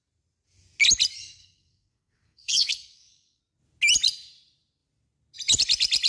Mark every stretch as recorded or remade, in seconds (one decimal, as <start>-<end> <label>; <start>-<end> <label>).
0.0-1.4 recorded; 1.4-3.4 remade; 3.4-6.1 recorded